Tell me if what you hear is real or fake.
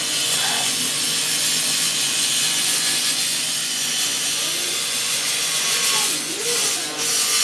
fake